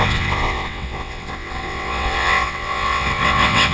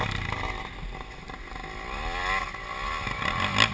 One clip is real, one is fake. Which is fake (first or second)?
first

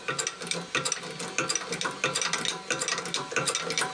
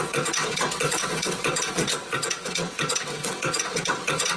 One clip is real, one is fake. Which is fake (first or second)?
second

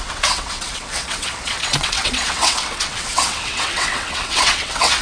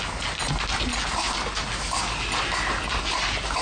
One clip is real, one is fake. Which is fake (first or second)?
first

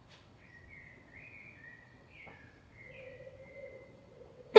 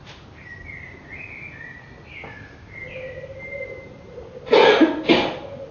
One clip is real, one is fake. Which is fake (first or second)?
first